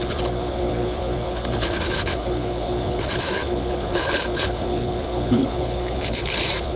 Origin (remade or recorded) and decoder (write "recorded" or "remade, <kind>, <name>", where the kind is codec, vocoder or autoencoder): remade, codec, HILCodec